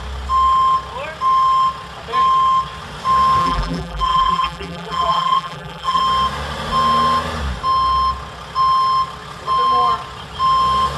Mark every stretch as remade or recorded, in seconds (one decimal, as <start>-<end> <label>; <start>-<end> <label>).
0.0-3.4 recorded; 3.4-6.0 remade; 6.0-11.0 recorded